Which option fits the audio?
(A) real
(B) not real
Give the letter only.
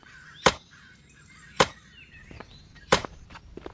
B